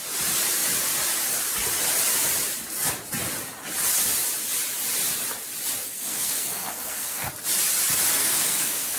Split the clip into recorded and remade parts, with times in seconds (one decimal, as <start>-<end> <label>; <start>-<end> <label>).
0.0-5.8 recorded; 5.8-7.3 remade; 7.3-8.2 recorded; 8.2-9.0 remade